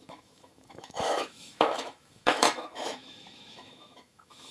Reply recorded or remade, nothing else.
remade